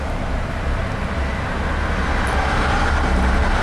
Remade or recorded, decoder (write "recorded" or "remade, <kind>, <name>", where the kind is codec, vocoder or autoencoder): recorded